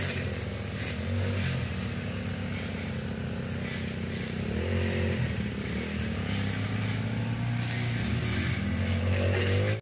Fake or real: real